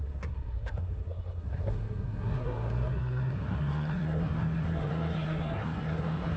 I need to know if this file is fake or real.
fake